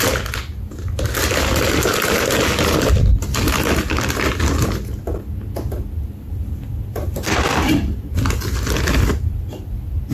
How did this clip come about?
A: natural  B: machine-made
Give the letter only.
A